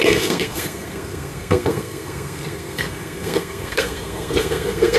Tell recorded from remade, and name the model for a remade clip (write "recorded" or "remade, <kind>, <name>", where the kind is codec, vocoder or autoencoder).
remade, codec, SNAC